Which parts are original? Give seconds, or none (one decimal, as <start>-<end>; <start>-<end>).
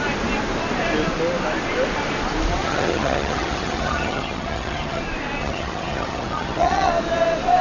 0.0-2.6; 5.0-5.4; 6.9-7.6